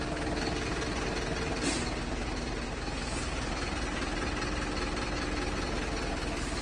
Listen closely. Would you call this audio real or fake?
real